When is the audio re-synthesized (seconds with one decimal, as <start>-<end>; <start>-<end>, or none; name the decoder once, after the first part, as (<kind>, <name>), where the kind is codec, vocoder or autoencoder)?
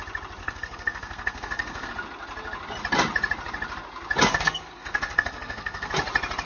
0.4-1.9 (codec, SNAC); 4.3-5.9